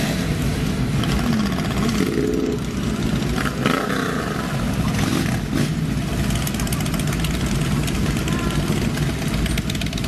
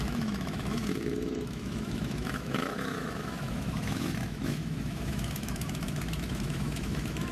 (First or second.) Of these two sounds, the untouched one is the first